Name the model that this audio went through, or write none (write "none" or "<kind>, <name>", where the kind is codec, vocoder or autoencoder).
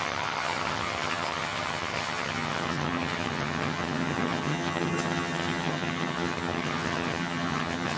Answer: vocoder, HiFi-GAN